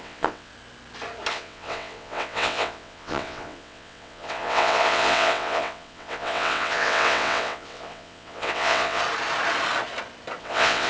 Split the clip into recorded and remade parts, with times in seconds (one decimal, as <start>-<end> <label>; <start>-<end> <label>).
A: 0.0-0.5 remade; 0.5-1.3 recorded; 1.3-9.0 remade; 9.0-10.4 recorded; 10.4-10.9 remade